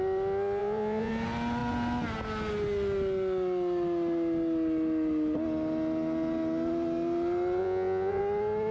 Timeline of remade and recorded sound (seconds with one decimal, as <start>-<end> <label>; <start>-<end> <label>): 0.0-0.6 recorded; 0.6-1.1 remade; 1.1-7.6 recorded; 7.6-8.2 remade; 8.2-8.7 recorded